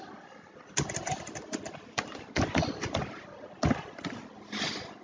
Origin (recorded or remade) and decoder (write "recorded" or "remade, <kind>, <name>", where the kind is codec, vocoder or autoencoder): recorded